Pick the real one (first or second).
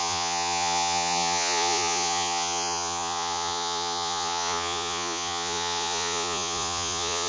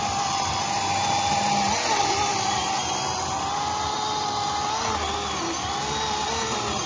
second